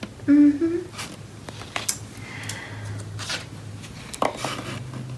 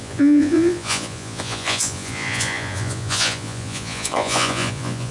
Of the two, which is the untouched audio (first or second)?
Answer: first